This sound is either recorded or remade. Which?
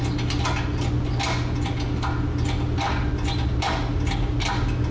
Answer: recorded